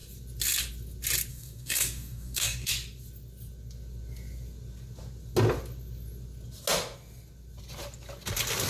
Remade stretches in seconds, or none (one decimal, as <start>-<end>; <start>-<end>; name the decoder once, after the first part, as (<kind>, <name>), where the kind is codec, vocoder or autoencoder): 1.3-2.7 (codec, DAC)